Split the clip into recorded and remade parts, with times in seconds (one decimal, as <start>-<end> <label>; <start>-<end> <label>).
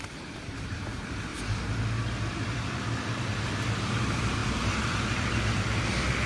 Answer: 0.0-6.3 remade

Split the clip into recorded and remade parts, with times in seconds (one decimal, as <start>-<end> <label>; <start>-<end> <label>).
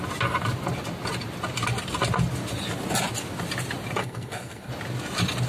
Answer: 0.0-4.0 recorded; 4.0-4.7 remade; 4.7-5.5 recorded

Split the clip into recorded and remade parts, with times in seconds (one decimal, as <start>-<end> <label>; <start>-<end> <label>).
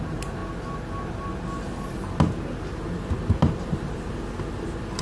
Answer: 0.0-5.0 recorded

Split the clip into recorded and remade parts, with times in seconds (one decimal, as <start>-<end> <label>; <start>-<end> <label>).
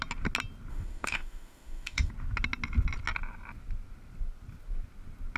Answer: 0.0-0.7 recorded; 0.7-2.1 remade; 2.1-5.4 recorded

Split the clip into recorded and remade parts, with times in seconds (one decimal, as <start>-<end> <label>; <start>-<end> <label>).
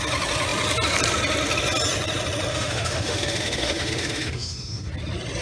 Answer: 0.0-2.5 recorded; 2.5-4.9 remade; 4.9-5.4 recorded